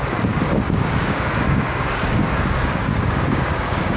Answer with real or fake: fake